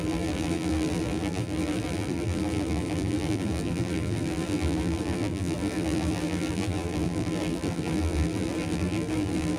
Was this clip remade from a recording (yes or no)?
yes